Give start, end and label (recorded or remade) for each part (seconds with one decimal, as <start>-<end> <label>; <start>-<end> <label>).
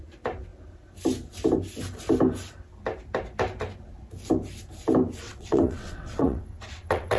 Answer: 0.0-5.2 recorded; 5.2-7.2 remade